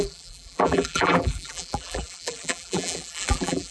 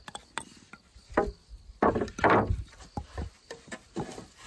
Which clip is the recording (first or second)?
second